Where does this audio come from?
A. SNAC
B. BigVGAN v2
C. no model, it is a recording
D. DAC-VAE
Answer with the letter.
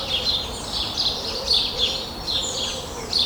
C